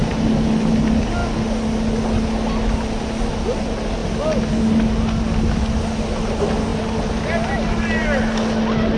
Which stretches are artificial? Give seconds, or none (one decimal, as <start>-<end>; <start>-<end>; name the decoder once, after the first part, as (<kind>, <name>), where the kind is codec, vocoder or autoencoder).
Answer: none